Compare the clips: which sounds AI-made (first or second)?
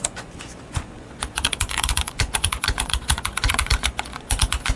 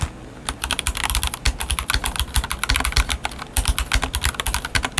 first